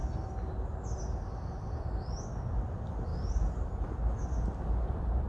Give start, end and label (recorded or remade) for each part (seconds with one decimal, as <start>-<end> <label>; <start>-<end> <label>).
0.0-5.3 recorded